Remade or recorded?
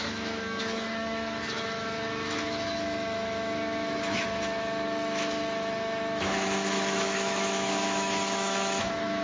remade